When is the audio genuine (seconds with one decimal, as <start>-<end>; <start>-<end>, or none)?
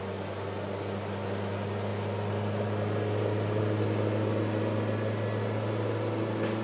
0.0-6.6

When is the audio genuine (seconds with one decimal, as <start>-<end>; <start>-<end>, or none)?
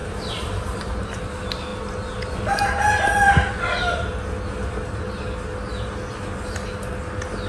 1.2-7.5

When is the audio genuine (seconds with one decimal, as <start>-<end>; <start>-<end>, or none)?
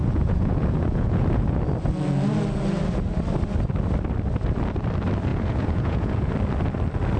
1.6-5.3; 6.3-7.2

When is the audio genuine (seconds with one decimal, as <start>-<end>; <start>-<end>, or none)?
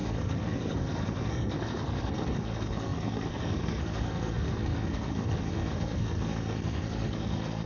none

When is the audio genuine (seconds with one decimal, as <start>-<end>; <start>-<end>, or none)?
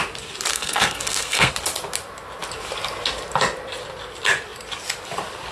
0.0-0.5; 1.5-5.5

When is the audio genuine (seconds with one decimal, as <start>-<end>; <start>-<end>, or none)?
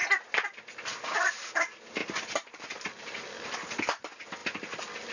0.0-4.4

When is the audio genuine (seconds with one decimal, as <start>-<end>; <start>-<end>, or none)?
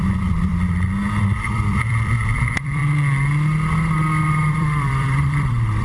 0.5-1.2; 2.8-4.3